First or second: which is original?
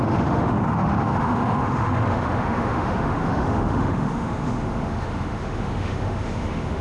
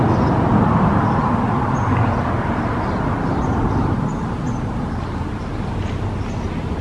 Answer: second